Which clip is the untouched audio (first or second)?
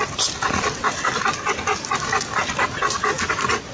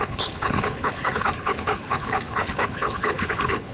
first